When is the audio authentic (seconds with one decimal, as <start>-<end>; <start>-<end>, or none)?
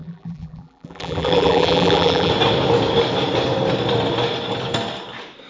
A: 2.3-5.5